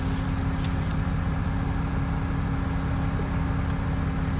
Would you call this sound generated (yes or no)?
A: no